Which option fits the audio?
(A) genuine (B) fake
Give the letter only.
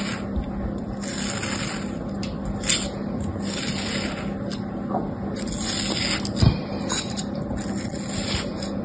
A